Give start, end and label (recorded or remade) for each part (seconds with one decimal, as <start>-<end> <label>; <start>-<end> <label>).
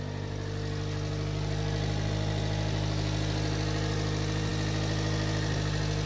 0.0-6.1 recorded